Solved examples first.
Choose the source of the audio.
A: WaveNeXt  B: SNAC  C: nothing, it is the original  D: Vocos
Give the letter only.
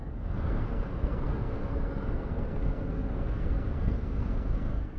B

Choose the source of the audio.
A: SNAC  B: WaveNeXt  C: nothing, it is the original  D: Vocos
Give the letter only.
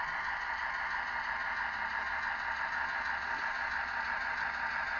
C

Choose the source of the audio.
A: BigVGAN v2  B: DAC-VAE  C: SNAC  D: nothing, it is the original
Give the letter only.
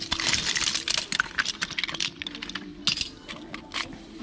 D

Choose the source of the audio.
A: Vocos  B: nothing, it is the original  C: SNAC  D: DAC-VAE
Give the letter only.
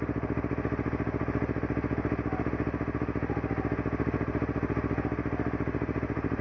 B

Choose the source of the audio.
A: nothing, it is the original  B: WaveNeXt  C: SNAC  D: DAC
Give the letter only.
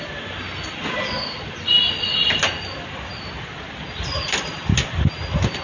A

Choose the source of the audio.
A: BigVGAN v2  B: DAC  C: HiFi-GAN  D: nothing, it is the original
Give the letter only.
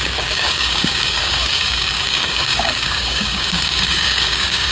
B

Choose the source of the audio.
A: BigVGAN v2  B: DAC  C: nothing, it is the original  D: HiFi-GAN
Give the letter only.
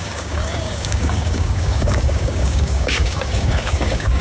B